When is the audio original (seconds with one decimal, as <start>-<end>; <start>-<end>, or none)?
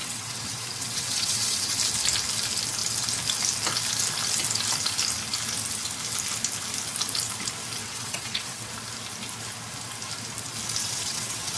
1.7-7.8; 8.7-10.8